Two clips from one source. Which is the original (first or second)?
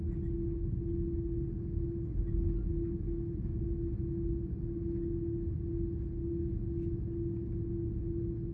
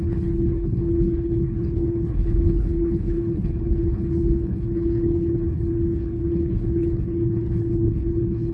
first